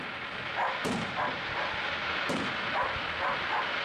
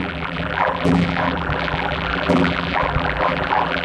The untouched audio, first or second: first